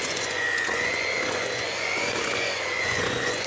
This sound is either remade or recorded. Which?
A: remade